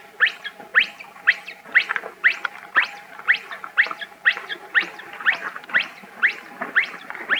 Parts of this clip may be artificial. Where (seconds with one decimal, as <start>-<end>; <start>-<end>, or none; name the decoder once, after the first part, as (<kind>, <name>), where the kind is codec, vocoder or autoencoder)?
0.7-1.3 (vocoder, BigVGAN v2); 4.5-6.1; 6.8-7.4